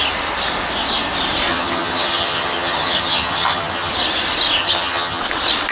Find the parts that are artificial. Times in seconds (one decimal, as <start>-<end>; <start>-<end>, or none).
1.5-3.9; 4.6-5.2